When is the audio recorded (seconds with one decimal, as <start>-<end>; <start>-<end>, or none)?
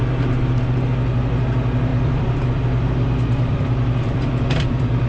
0.0-1.9